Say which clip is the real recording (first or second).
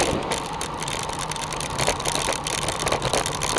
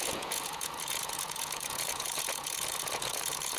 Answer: first